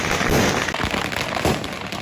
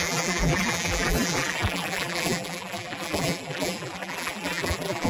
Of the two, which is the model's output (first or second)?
second